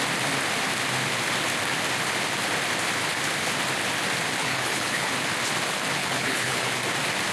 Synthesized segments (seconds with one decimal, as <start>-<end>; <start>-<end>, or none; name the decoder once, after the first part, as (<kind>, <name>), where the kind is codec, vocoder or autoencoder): 4.4-5.1 (codec, HILCodec); 6.0-6.7